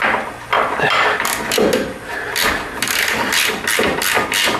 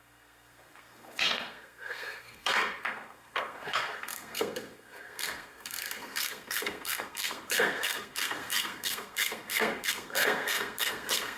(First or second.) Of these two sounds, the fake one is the second